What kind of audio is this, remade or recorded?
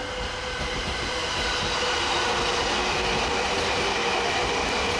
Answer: recorded